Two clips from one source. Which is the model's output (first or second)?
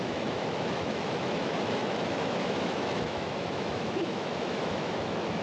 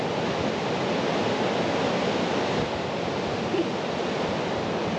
first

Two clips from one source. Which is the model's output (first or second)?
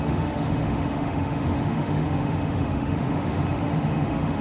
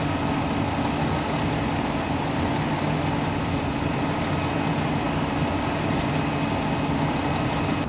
first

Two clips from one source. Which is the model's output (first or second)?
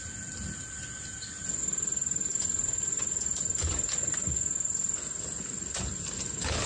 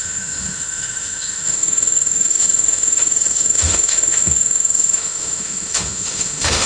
second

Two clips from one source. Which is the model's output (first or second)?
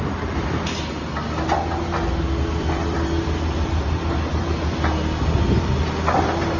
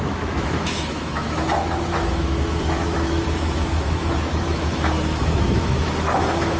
second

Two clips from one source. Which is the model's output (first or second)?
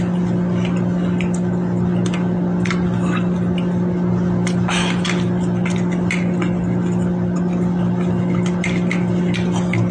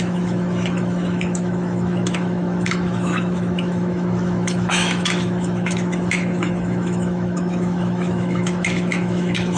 second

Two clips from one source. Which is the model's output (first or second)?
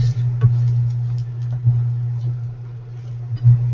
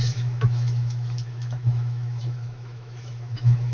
second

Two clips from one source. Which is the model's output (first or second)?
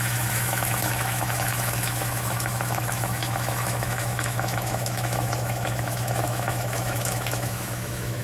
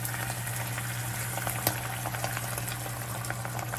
first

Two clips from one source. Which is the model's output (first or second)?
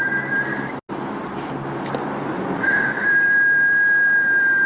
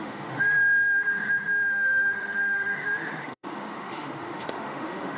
second